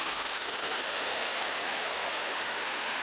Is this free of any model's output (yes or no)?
no